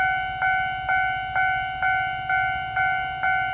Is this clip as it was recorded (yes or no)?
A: yes